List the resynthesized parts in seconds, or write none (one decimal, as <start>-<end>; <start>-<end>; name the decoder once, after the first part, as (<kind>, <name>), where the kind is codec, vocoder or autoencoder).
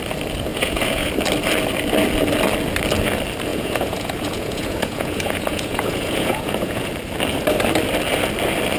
0.5-1.1 (vocoder, Vocos); 3.5-6.9